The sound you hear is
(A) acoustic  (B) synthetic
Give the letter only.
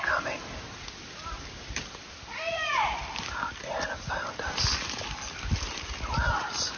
A